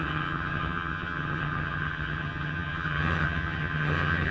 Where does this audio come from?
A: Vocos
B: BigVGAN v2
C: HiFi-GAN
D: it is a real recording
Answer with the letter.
C